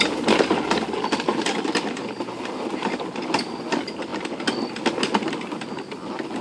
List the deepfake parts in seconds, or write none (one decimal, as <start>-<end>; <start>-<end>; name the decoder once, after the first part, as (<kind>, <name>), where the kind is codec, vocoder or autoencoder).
none